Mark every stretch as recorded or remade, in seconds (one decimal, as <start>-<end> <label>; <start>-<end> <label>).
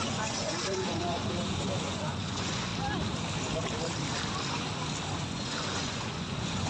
0.0-2.7 remade; 2.7-5.2 recorded; 5.2-6.7 remade